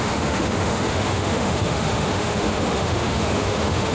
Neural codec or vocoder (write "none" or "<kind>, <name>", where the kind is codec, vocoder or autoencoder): autoencoder, DAC-VAE